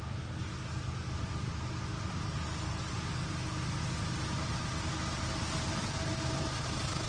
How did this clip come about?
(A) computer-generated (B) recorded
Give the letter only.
B